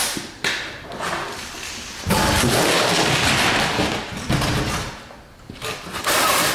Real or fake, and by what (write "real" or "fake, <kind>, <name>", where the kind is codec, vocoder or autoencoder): fake, vocoder, BigVGAN v2